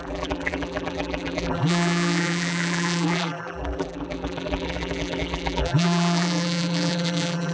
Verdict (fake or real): fake